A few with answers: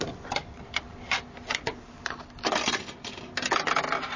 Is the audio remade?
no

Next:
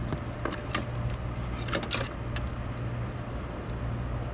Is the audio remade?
no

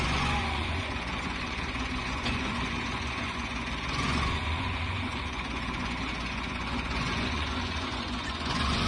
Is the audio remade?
yes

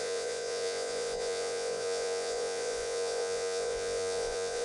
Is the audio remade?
yes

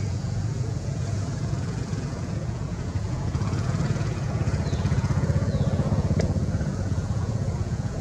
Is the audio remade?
yes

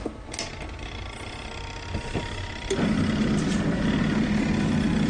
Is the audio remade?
no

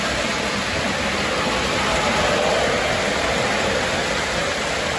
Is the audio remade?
no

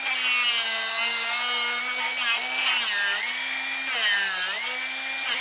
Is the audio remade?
no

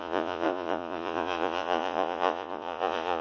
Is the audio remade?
yes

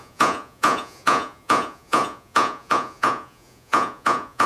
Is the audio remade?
yes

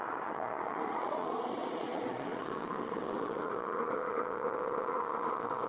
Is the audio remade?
yes